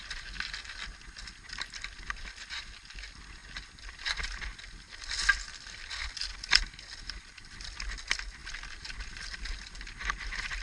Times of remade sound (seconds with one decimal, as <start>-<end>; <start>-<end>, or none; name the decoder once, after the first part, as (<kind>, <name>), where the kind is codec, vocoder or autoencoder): none